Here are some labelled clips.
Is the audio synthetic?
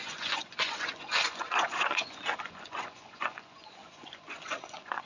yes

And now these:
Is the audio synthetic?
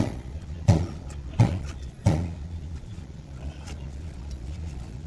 yes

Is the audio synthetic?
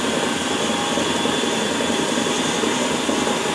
yes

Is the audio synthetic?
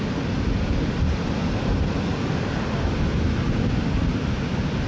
no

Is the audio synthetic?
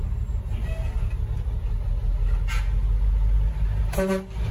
no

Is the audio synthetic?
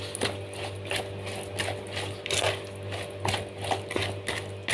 no